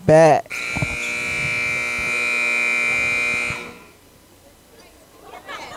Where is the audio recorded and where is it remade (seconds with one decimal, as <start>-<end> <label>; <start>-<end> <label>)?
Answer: 0.0-5.8 recorded